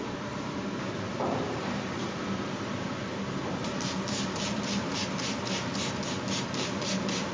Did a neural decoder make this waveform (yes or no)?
yes